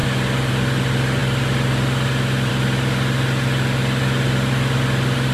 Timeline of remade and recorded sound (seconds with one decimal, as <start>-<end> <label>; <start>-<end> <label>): 0.0-5.3 recorded